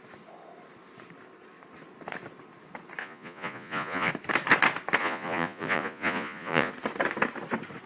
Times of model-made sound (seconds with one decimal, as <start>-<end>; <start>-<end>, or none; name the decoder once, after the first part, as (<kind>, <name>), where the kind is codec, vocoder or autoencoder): 3.0-4.1 (vocoder, Vocos); 5.0-6.7